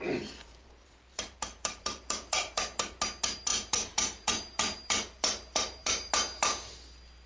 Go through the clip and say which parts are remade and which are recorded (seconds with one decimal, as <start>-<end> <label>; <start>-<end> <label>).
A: 0.0-0.4 recorded; 0.4-2.6 remade; 2.6-3.5 recorded; 3.5-6.1 remade; 6.1-7.3 recorded

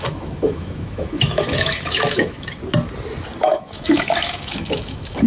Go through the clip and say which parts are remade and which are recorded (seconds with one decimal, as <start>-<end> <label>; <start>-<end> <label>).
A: 0.0-2.6 remade; 2.6-3.4 recorded; 3.4-5.3 remade

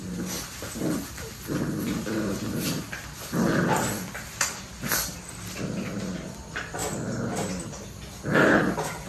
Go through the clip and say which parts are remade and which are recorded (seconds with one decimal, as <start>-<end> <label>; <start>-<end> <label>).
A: 0.0-9.1 recorded

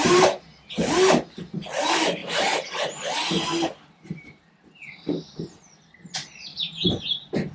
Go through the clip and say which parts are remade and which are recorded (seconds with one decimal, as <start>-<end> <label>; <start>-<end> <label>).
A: 0.0-2.2 recorded; 2.2-5.5 remade; 5.5-6.5 recorded; 6.5-7.0 remade; 7.0-7.5 recorded

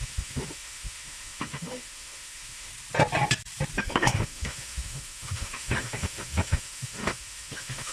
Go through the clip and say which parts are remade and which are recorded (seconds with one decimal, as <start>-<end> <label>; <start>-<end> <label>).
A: 0.0-2.7 remade; 2.7-3.8 recorded; 3.8-7.9 remade

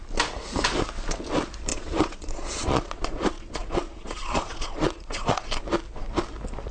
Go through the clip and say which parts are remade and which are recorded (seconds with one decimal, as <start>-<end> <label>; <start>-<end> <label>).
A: 0.0-1.7 recorded; 1.7-5.5 remade; 5.5-6.7 recorded

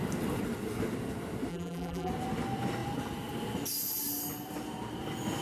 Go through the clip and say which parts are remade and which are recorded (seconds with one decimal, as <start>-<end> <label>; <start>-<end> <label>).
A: 0.0-1.5 recorded; 1.5-2.1 remade; 2.1-5.4 recorded

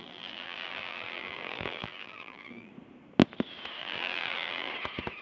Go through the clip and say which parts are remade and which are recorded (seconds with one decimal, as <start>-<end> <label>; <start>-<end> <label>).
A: 0.0-2.7 remade; 2.7-3.8 recorded; 3.8-4.7 remade; 4.7-5.2 recorded